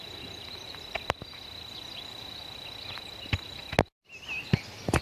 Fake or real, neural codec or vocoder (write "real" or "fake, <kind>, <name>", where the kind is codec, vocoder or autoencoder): real